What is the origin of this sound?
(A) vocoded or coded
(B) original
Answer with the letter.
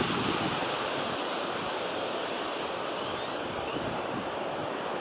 B